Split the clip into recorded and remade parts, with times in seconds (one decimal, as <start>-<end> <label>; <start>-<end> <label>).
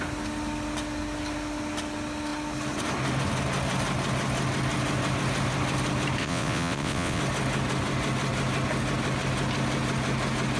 0.0-6.2 recorded; 6.2-7.2 remade; 7.2-10.6 recorded